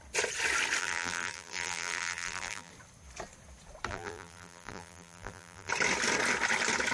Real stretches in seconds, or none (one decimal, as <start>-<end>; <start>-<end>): 0.0-0.8; 2.7-3.9; 5.7-6.9